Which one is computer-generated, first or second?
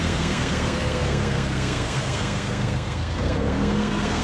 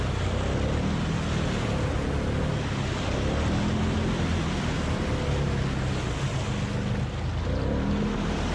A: first